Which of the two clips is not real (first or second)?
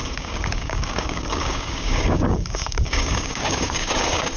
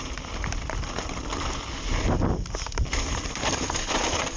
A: first